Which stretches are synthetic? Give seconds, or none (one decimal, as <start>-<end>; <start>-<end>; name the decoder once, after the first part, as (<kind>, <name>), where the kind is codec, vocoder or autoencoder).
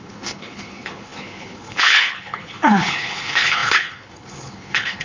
0.0-5.0 (codec, HILCodec)